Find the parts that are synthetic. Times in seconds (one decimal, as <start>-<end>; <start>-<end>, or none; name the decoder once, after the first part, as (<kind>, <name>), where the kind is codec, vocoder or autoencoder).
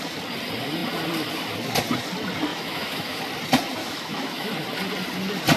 2.5-3.2 (autoencoder, DAC-VAE); 3.8-4.5